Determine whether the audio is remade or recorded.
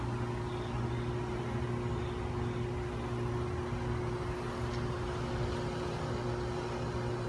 recorded